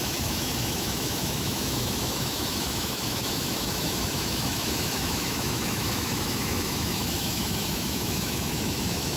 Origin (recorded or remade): remade